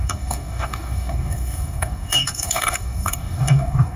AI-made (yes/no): yes